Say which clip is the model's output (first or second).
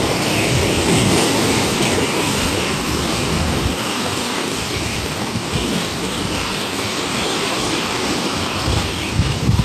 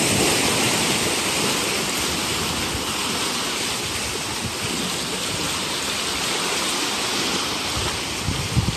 first